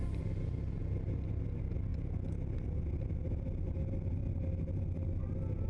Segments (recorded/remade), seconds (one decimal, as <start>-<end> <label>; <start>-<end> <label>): 0.0-5.7 recorded